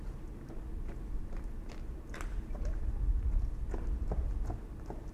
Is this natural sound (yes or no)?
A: yes